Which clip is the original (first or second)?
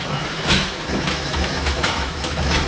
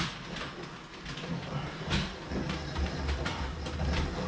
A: second